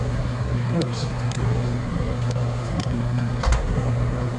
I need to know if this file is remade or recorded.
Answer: remade